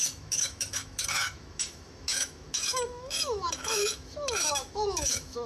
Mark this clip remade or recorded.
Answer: remade